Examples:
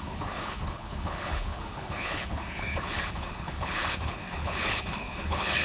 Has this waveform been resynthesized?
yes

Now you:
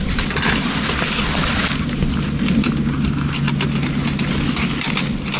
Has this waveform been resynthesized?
no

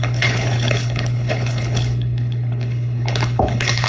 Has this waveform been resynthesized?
yes